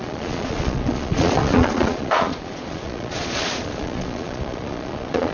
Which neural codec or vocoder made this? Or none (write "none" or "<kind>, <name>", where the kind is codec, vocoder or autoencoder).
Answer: vocoder, Vocos